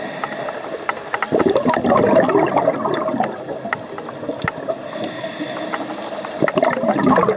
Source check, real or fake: real